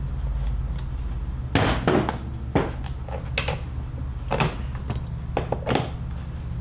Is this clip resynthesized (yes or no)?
no